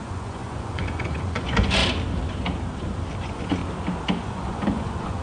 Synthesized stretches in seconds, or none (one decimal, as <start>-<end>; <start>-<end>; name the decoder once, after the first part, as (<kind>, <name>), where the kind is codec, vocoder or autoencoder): 0.0-1.8 (vocoder, Vocos); 3.2-3.6; 4.2-5.2